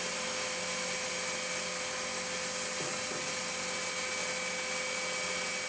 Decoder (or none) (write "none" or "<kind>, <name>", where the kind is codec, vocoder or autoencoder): none